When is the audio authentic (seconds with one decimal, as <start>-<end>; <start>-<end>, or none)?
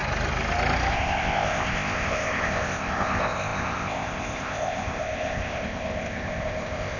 0.0-0.9